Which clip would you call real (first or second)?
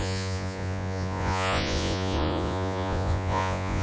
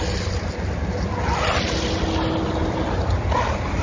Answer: second